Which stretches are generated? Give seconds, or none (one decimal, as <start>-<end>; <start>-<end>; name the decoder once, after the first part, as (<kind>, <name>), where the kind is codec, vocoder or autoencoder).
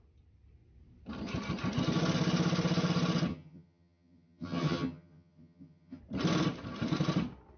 3.3-6.0 (vocoder, HiFi-GAN)